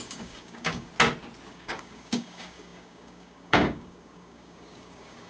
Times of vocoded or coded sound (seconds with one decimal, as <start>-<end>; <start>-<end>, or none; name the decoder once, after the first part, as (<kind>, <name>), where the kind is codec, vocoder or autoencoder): 0.0-0.9 (codec, DAC); 1.5-5.3